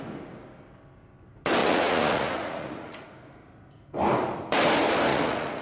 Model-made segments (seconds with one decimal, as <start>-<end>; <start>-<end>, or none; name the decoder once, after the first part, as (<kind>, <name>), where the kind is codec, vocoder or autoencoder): 1.6-3.1 (vocoder, Vocos); 5.1-5.6